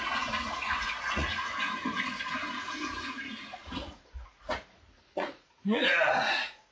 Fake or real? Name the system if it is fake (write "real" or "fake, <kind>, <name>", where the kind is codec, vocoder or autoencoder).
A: fake, vocoder, Vocos